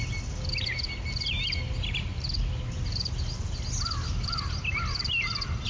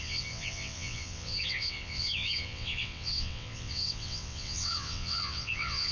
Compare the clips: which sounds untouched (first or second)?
first